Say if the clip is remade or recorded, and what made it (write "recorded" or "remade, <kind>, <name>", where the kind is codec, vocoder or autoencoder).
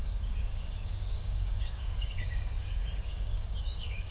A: remade, codec, DAC